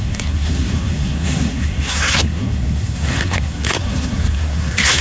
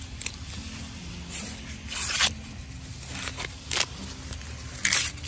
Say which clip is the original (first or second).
second